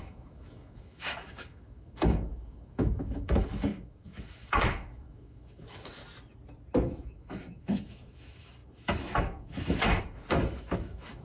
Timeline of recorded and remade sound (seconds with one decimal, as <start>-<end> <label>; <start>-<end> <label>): 0.0-6.0 remade; 6.0-6.8 recorded; 6.8-11.2 remade